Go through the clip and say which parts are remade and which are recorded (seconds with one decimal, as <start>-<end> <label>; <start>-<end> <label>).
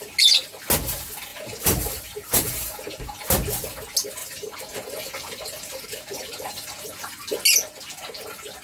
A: 0.0-1.3 recorded; 1.3-3.2 remade; 3.2-4.2 recorded; 4.2-6.7 remade; 6.7-8.6 recorded